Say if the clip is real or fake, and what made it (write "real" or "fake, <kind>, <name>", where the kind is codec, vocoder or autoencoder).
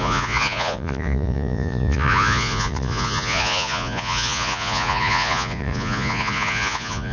fake, vocoder, Vocos